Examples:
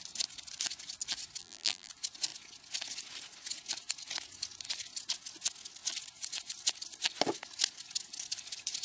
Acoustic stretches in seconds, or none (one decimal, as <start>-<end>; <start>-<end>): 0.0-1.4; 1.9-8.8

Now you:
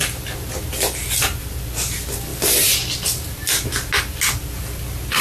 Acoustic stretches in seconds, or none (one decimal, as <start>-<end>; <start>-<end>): 0.0-5.2

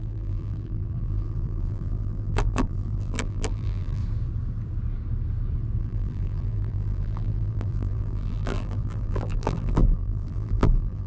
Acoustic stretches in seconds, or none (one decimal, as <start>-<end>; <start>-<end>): 4.0-5.8